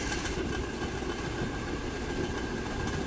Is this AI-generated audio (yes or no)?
no